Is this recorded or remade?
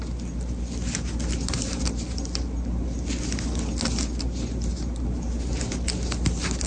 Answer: recorded